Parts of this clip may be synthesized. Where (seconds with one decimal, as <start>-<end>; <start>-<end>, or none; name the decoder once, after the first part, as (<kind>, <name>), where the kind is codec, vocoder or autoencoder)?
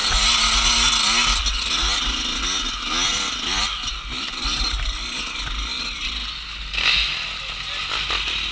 none